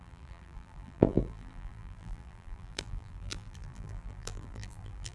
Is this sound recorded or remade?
remade